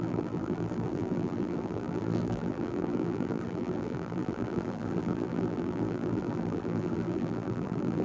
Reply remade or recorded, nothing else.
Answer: remade